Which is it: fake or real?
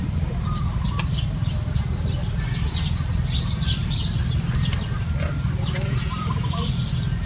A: real